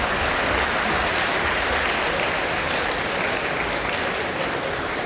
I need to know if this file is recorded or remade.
recorded